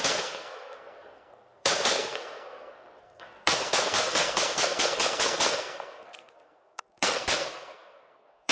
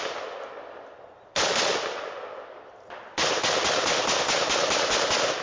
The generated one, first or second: first